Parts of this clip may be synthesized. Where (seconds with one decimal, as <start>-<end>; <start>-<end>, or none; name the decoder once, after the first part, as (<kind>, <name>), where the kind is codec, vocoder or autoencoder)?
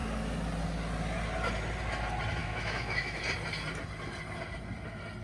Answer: 2.4-3.2 (autoencoder, DAC-VAE)